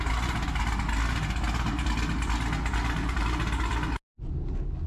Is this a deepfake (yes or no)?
no